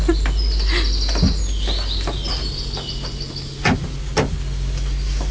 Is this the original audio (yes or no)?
yes